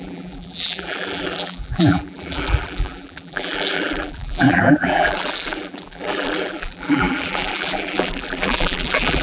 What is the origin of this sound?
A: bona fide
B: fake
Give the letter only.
B